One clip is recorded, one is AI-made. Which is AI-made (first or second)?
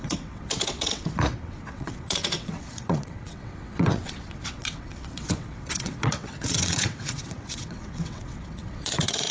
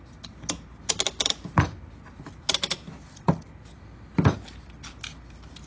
first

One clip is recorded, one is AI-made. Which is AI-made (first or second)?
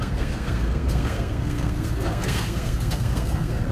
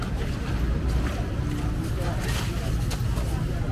first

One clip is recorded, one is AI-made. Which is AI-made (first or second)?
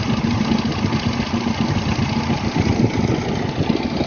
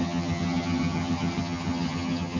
second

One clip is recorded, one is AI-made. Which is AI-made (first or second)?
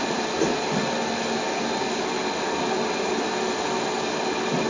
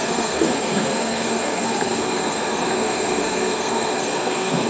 second